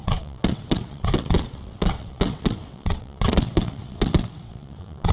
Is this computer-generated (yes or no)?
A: yes